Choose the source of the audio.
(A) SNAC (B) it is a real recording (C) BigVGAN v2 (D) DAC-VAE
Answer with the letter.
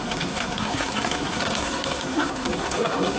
A